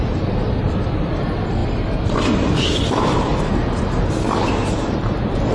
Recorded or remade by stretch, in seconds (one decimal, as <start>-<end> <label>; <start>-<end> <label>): 0.0-5.5 recorded